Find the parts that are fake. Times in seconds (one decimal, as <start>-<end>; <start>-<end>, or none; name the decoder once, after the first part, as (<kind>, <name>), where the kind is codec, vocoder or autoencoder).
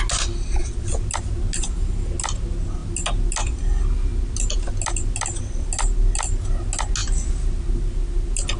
none